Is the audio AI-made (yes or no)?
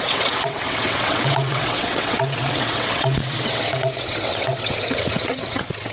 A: yes